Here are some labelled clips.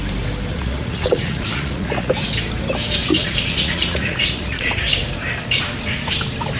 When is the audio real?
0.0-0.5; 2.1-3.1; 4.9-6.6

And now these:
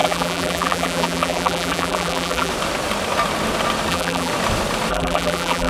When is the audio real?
2.5-3.9; 4.3-4.9

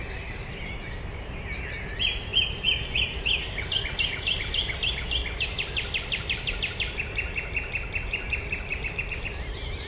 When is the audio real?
0.0-9.9